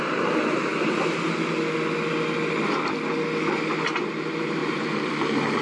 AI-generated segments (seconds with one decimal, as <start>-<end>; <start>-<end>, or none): 0.0-0.7; 4.1-5.6